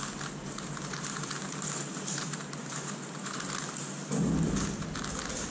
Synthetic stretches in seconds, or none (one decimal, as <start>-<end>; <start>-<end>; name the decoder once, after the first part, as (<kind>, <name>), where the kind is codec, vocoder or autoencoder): 0.4-3.5 (vocoder, BigVGAN v2)